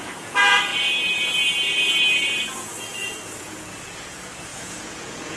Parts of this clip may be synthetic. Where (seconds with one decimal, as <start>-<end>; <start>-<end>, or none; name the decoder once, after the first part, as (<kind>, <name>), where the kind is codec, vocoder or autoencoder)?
0.0-5.4 (vocoder, Vocos)